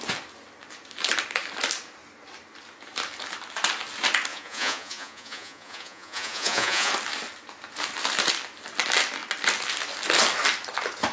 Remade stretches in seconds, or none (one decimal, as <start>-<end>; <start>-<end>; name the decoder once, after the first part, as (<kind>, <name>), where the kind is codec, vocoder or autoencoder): 4.3-6.9 (vocoder, Vocos)